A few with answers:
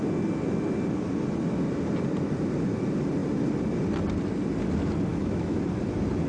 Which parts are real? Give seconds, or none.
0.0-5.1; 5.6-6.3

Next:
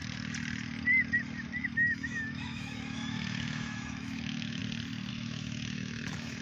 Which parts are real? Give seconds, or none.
0.0-1.6; 4.6-5.1

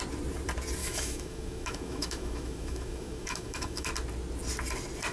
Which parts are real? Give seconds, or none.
0.0-0.8; 3.9-5.1

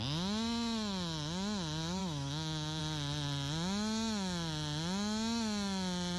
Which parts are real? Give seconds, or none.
0.0-2.0; 2.8-6.2

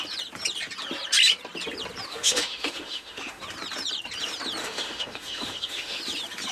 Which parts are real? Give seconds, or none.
0.0-2.1; 3.4-4.6; 6.0-6.5

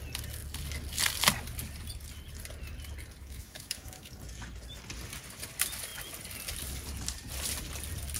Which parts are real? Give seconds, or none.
0.0-3.2; 4.1-8.2

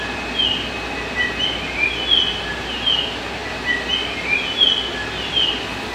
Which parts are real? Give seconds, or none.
0.0-5.9